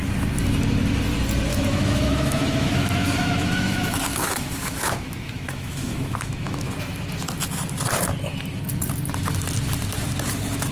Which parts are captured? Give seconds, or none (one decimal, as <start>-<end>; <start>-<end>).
0.0-1.5; 6.7-10.7